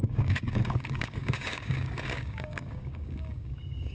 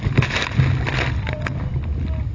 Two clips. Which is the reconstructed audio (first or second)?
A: first